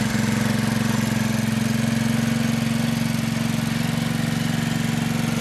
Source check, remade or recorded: recorded